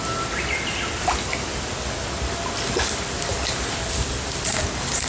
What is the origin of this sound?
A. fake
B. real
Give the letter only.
B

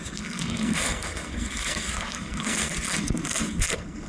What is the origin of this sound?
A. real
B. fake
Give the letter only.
B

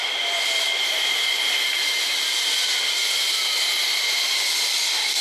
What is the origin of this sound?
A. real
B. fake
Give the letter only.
A